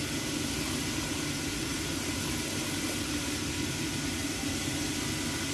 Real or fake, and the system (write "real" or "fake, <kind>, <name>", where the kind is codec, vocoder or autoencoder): real